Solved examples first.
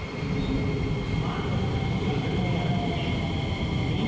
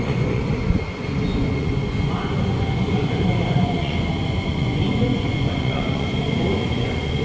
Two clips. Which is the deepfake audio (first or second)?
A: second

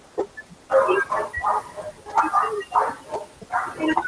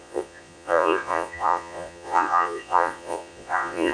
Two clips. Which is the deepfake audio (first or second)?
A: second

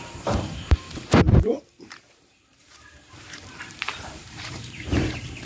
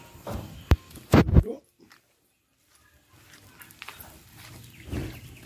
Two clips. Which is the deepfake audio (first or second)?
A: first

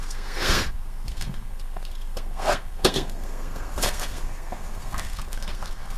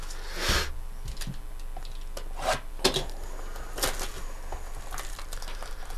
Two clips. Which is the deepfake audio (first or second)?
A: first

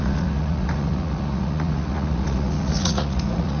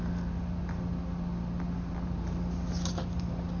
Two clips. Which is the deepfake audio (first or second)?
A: first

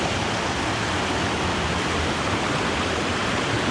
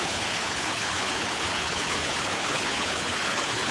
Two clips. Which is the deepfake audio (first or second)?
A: second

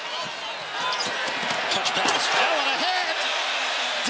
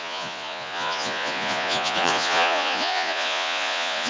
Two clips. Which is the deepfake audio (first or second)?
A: second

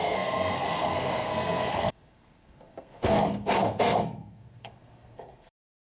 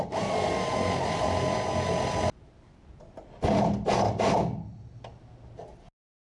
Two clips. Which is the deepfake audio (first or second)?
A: first